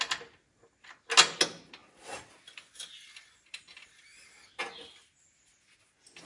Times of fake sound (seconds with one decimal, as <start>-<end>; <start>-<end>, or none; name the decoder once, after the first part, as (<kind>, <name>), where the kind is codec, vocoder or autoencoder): none